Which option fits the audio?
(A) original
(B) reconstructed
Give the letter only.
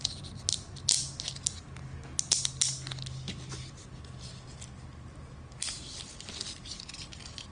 A